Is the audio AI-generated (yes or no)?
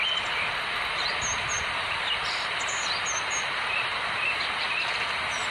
no